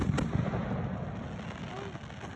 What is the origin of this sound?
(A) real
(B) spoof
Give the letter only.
A